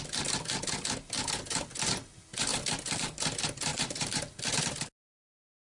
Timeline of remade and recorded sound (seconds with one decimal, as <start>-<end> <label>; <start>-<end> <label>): 0.0-2.5 recorded; 2.5-3.2 remade; 3.2-3.7 recorded; 3.7-4.3 remade; 4.3-5.8 recorded